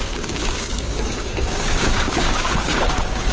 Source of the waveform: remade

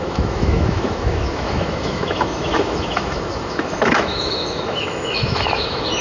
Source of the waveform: remade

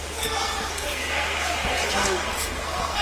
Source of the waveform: remade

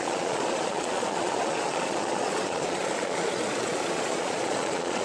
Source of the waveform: remade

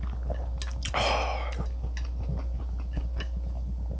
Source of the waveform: recorded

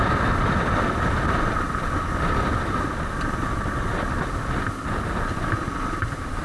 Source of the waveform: recorded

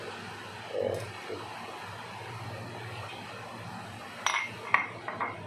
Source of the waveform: recorded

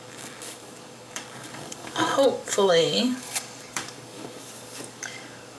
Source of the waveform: remade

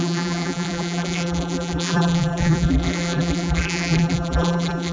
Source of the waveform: remade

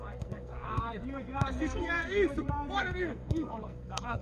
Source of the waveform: remade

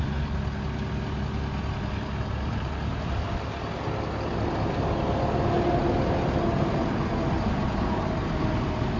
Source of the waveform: recorded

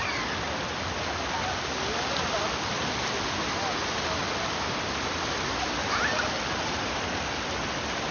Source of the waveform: recorded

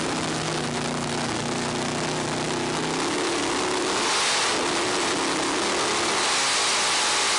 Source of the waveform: recorded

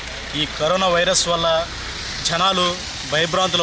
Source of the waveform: recorded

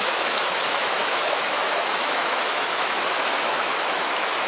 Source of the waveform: remade